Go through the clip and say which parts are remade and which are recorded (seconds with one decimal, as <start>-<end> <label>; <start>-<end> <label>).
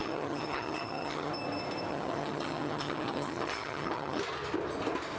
0.0-1.3 remade; 1.3-1.9 recorded; 1.9-4.2 remade; 4.2-5.2 recorded